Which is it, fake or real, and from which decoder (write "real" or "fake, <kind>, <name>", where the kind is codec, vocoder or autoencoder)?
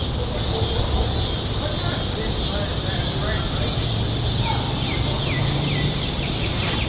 real